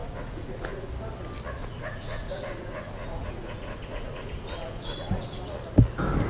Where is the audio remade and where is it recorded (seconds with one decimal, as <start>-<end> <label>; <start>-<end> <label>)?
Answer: 0.0-0.9 remade; 0.9-1.6 recorded; 1.6-5.4 remade; 5.4-6.3 recorded